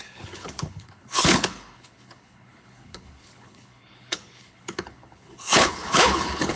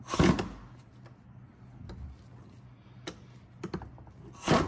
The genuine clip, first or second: second